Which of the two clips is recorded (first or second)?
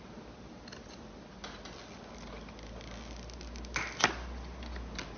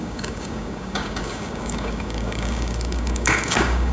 first